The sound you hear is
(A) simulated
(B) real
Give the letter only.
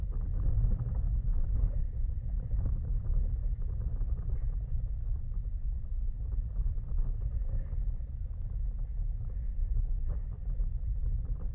B